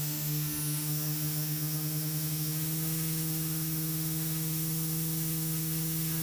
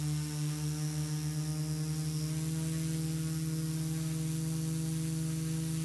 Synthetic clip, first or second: first